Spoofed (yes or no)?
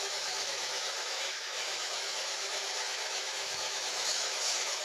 yes